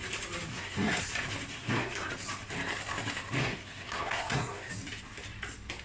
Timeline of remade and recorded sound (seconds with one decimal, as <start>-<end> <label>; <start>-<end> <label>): 0.0-0.5 recorded; 0.5-1.0 remade; 1.0-1.5 recorded; 1.5-2.1 remade; 2.1-3.4 recorded; 3.4-4.7 remade; 4.7-5.8 recorded

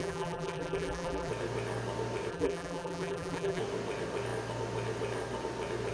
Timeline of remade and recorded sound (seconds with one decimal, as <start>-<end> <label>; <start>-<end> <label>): 0.0-1.3 remade; 1.3-2.3 recorded; 2.3-3.6 remade; 3.6-5.9 recorded

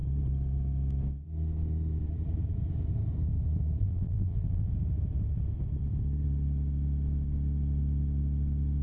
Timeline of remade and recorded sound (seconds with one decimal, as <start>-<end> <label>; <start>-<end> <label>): 0.0-3.8 recorded; 3.8-4.7 remade; 4.7-8.8 recorded